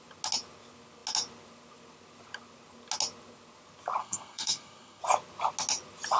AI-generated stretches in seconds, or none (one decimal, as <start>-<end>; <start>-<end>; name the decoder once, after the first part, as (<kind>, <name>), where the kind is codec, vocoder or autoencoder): 4.0-5.0 (codec, SNAC)